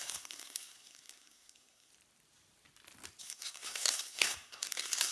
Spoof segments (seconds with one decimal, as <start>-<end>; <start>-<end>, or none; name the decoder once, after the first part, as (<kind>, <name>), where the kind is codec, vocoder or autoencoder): 0.0-1.9 (codec, SNAC); 3.2-5.1